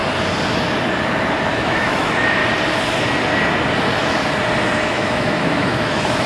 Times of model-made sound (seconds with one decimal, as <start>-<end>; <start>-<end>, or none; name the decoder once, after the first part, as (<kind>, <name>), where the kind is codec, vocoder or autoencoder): 1.5-2.4 (autoencoder, DAC-VAE); 4.8-6.3